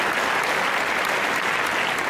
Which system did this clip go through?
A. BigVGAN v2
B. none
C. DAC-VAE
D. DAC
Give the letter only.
B